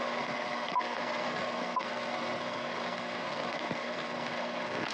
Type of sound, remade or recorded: remade